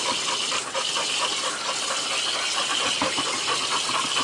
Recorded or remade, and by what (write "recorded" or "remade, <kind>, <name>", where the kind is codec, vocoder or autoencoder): recorded